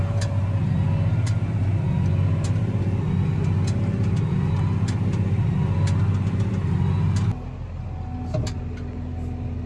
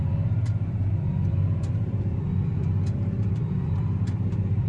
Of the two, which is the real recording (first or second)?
first